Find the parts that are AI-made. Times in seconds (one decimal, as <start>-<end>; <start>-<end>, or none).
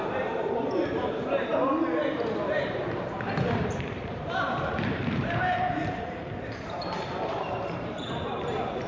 0.0-1.5; 2.0-8.9